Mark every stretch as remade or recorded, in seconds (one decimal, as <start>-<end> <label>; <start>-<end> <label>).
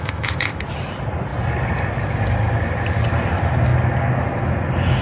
0.0-0.6 remade; 0.6-5.0 recorded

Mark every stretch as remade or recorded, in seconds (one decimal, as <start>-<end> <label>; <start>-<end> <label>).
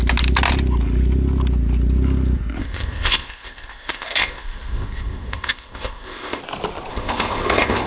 0.0-2.6 recorded; 2.6-6.4 remade; 6.4-6.9 recorded; 6.9-7.9 remade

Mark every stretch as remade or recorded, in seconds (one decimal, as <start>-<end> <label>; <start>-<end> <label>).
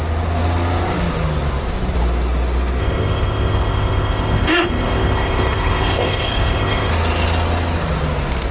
0.0-2.8 recorded; 2.8-6.9 remade; 6.9-8.5 recorded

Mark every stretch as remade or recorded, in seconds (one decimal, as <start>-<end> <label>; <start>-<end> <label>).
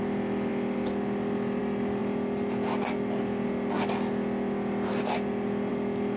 0.0-6.2 recorded